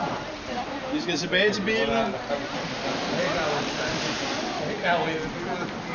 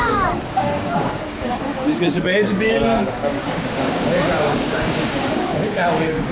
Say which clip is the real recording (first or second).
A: first